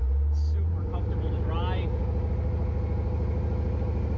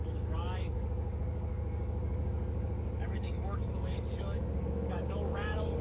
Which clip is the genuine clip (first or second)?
first